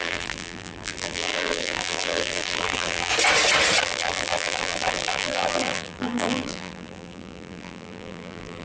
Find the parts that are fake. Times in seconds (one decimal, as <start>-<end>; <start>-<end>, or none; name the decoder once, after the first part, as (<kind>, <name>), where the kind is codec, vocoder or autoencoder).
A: 0.0-3.1 (vocoder, BigVGAN v2); 3.8-8.6